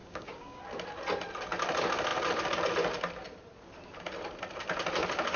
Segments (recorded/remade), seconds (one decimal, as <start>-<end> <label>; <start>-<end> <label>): 0.0-0.6 remade; 0.6-5.4 recorded